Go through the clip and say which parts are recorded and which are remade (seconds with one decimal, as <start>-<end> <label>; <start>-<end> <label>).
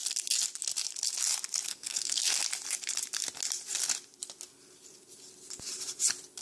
0.0-1.7 recorded; 1.7-2.2 remade; 2.2-6.4 recorded